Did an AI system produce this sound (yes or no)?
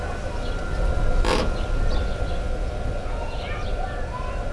no